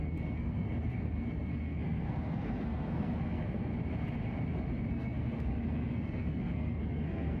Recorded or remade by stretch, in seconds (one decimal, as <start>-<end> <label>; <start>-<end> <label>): 0.0-3.7 remade; 3.7-4.9 recorded; 4.9-7.4 remade